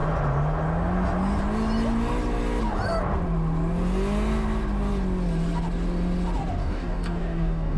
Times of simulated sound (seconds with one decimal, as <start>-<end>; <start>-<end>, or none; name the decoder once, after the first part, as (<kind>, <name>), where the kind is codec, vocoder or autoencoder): 6.6-7.8 (codec, DAC)